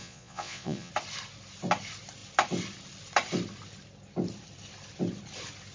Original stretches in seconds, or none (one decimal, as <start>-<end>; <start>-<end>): 0.9-5.7